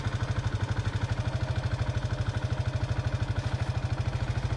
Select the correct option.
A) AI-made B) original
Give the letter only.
B